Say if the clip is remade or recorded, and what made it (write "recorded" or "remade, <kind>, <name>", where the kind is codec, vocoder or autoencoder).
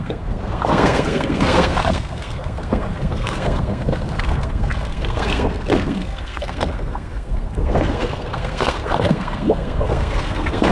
remade, codec, SNAC